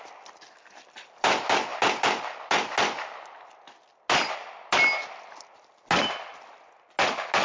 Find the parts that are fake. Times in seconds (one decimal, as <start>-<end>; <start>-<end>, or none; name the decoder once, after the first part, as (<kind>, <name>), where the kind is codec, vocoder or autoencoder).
none